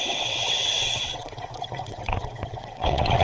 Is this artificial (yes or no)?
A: yes